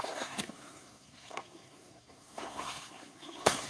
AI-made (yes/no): yes